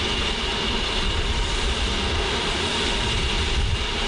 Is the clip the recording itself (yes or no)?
no